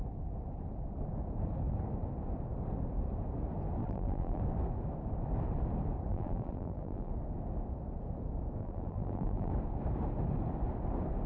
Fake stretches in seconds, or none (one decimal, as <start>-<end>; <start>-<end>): 3.8-4.4; 6.1-7.1; 8.6-9.5